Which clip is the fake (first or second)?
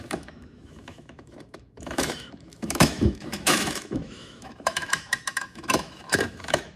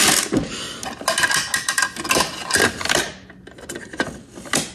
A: first